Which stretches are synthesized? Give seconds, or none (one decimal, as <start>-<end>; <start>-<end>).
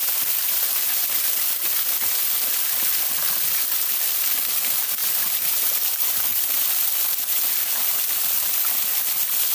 none